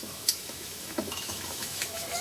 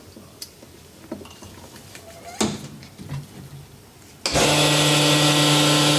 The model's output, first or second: first